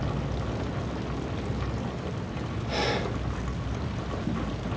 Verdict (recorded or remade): recorded